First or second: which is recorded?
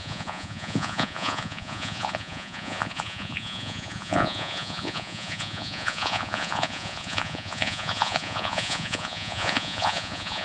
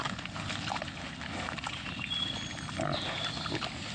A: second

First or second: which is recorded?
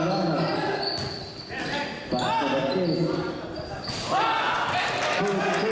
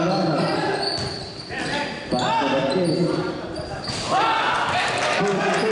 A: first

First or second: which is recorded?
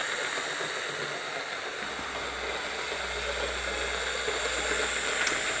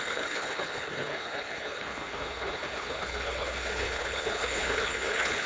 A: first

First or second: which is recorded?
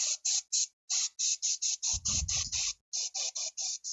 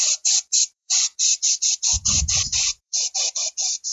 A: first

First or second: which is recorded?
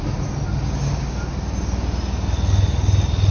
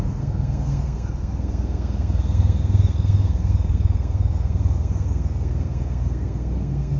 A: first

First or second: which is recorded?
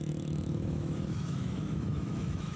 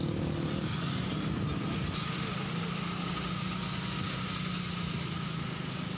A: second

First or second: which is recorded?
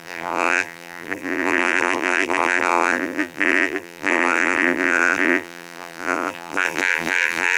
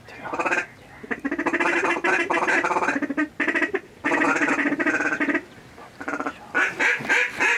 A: second